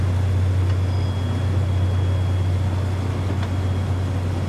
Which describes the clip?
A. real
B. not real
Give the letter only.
A